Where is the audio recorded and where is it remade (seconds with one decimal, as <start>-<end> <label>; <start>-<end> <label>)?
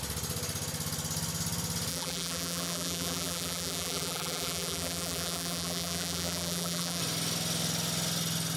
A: 0.0-1.9 recorded; 1.9-7.0 remade; 7.0-8.6 recorded